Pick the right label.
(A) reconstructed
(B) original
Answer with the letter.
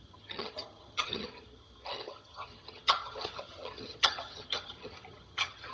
A